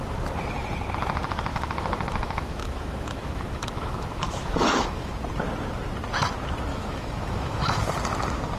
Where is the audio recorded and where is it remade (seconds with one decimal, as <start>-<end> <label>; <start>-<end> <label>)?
0.0-1.5 recorded; 1.5-5.1 remade; 5.1-6.7 recorded; 6.7-7.8 remade; 7.8-8.6 recorded